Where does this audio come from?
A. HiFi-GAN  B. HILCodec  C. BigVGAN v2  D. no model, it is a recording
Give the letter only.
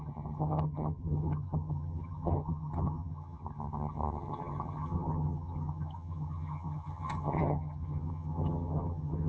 A